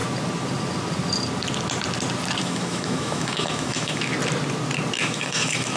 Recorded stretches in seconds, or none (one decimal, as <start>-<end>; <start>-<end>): 0.0-2.4; 4.1-5.0